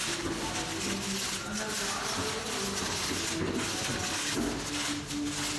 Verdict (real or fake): real